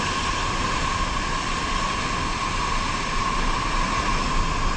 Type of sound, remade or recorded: recorded